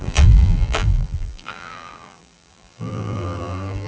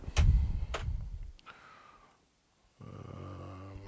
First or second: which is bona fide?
second